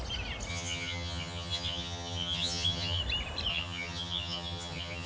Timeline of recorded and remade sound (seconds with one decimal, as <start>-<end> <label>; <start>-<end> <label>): 0.0-0.5 recorded; 0.5-3.0 remade; 3.0-3.5 recorded; 3.5-5.1 remade